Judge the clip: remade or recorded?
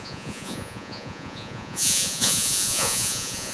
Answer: remade